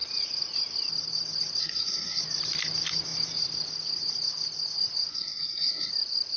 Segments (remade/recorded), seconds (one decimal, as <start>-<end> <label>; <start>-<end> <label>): 0.0-1.6 recorded; 1.6-2.2 remade; 2.2-5.1 recorded; 5.1-5.9 remade; 5.9-6.4 recorded